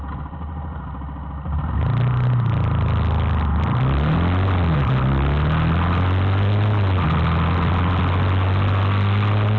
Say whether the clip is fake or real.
real